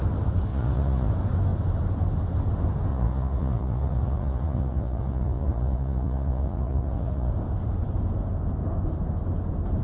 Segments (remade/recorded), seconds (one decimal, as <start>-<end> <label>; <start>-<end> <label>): 0.0-0.5 recorded; 0.5-1.1 remade; 1.1-2.9 recorded; 2.9-7.3 remade; 7.3-9.8 recorded